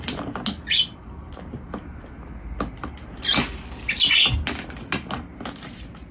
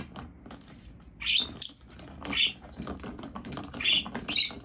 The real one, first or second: first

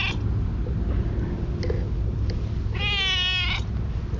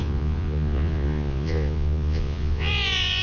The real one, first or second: first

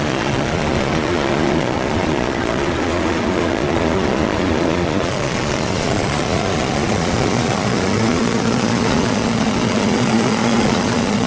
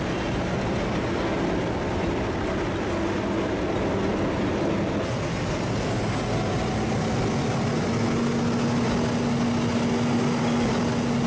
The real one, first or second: second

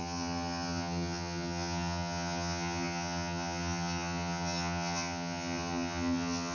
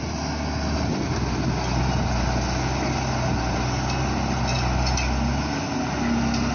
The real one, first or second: second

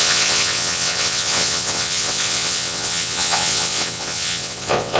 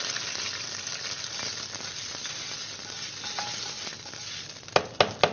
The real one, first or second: second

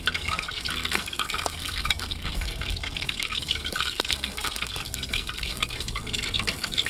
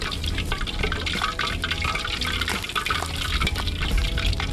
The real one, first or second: second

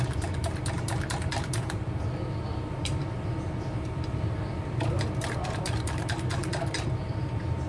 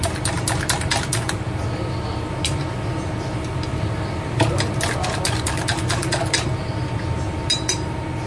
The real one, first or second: second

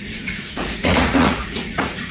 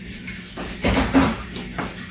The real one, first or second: second